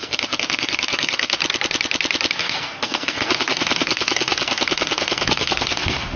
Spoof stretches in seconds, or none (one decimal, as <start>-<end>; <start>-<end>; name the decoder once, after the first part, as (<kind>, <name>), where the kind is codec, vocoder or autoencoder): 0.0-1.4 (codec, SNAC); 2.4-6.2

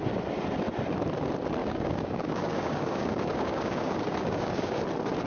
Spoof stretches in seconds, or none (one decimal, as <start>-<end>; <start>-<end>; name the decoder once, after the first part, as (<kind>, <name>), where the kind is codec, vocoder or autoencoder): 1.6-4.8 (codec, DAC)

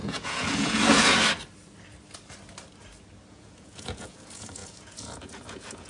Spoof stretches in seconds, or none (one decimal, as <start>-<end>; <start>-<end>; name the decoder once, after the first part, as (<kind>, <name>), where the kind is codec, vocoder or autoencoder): 0.0-1.2 (vocoder, Vocos); 3.3-5.9